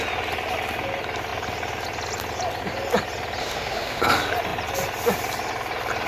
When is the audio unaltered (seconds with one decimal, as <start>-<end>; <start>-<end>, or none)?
0.0-3.4; 4.0-6.1